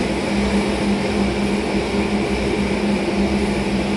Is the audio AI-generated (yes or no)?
no